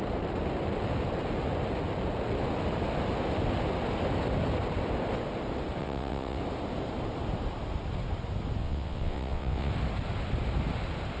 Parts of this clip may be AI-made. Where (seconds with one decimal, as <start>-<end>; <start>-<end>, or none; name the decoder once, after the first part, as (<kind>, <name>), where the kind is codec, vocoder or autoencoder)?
5.8-6.4 (vocoder, WaveNeXt); 8.6-9.7